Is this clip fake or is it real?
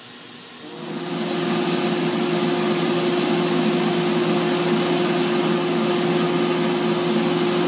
real